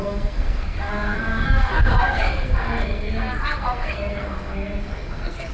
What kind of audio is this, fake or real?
fake